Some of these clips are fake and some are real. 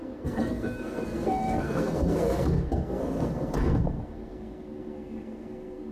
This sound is fake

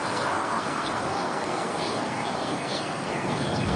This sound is fake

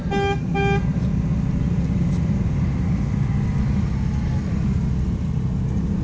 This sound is real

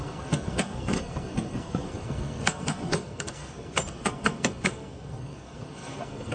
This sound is fake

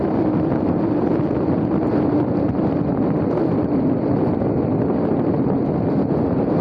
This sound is real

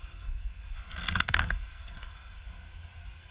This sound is fake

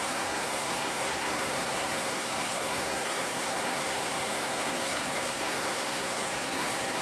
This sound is fake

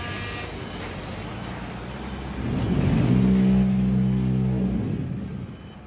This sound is real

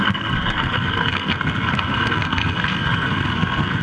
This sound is fake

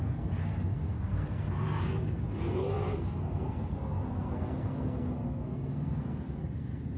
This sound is fake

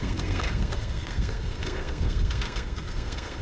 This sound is fake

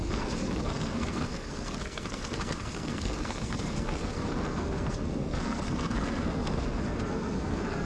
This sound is fake